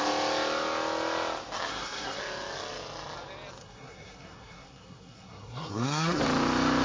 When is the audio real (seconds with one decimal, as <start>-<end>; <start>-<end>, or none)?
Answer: 0.0-1.7; 2.2-3.6; 6.2-6.8